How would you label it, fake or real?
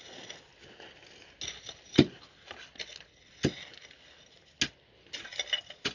real